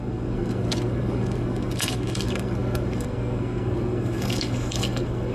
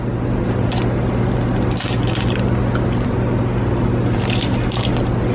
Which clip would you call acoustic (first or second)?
second